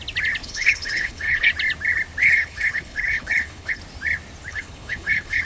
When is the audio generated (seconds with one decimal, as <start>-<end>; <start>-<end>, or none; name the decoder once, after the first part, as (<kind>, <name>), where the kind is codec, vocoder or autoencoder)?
0.4-1.5 (codec, HILCodec); 2.2-3.8; 4.5-5.4